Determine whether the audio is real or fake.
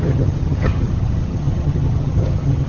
fake